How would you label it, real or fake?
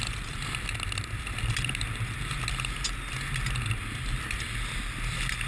real